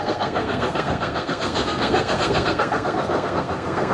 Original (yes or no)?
no